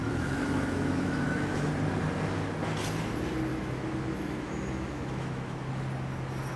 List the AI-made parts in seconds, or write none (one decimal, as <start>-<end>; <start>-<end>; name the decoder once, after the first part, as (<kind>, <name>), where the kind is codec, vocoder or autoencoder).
0.0-1.7 (autoencoder, DAC-VAE); 3.5-5.7